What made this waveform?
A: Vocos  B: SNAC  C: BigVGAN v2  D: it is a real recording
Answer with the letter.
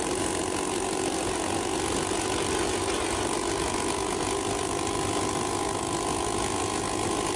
D